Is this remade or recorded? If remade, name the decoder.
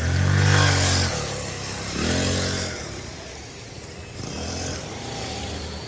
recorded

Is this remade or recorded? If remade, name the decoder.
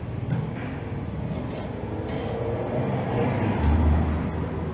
recorded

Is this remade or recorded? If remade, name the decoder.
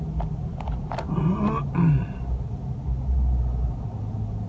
recorded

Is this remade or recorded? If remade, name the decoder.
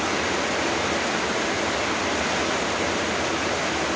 recorded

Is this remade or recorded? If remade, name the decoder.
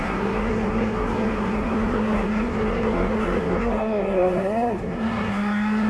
remade, codec, SNAC